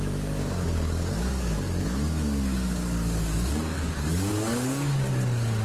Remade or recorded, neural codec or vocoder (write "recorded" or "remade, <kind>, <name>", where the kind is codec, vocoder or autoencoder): remade, codec, DAC